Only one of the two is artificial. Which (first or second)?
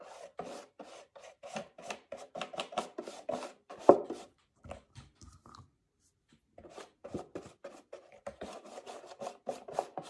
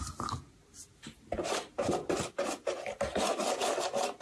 first